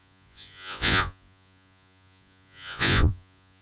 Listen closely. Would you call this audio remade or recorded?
remade